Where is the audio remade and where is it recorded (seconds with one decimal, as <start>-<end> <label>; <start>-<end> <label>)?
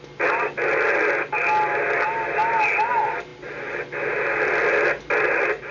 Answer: 0.0-5.7 recorded